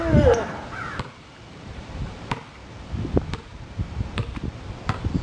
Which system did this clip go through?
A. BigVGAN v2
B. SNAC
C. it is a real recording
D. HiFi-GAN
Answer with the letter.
A